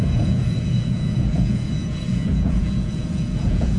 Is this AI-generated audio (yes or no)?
yes